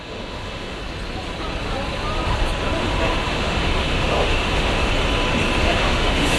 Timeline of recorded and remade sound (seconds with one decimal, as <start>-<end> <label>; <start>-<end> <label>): 0.0-0.8 remade; 0.8-2.8 recorded; 2.8-4.9 remade; 4.9-5.6 recorded; 5.6-6.4 remade